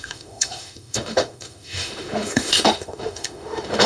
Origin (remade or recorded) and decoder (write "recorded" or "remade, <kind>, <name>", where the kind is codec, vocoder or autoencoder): remade, autoencoder, DAC-VAE